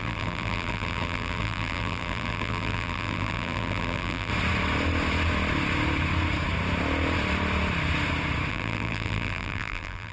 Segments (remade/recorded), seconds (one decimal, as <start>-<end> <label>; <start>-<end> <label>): 0.0-4.3 remade; 4.3-8.5 recorded; 8.5-10.1 remade

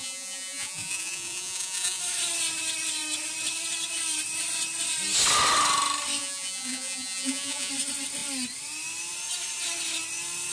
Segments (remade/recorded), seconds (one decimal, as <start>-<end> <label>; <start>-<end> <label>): 0.0-2.0 remade; 2.0-6.2 recorded; 6.2-7.7 remade; 7.7-10.5 recorded

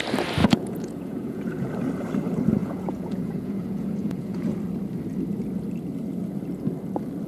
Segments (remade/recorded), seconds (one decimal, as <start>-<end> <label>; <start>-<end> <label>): 0.0-0.4 recorded; 0.4-1.7 remade; 1.7-2.6 recorded; 2.6-4.6 remade; 4.6-7.3 recorded

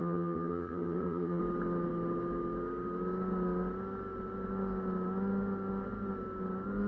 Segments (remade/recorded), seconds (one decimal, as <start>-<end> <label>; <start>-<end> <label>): 0.0-1.4 remade; 1.4-6.9 recorded

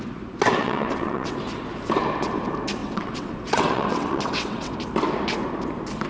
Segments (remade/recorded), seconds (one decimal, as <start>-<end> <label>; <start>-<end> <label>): 0.0-0.6 recorded; 0.6-1.4 remade; 1.4-2.8 recorded; 2.8-4.7 remade; 4.7-6.1 recorded

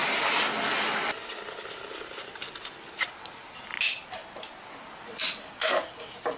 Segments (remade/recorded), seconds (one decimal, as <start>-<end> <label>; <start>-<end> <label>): 0.0-6.4 recorded